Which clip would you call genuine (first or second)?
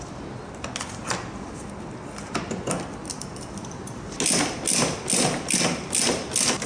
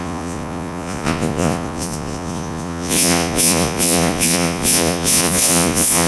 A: first